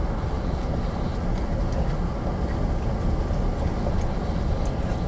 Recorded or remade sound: recorded